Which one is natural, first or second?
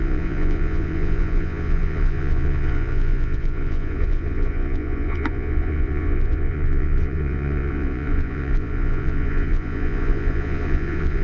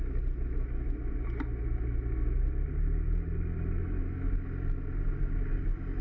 second